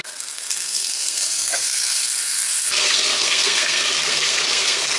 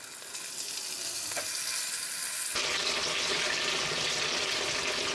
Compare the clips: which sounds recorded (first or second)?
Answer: second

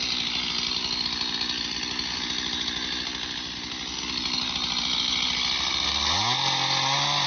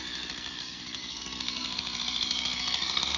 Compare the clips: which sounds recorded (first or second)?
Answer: first